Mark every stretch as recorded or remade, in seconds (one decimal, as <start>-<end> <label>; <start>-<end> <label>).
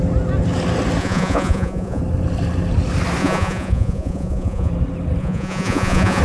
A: 0.0-1.0 recorded; 1.0-2.0 remade; 2.0-3.2 recorded; 3.2-4.7 remade; 4.7-5.2 recorded; 5.2-6.2 remade